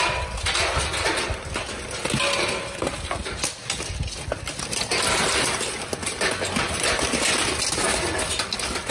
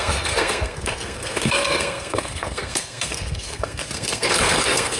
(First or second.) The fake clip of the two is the second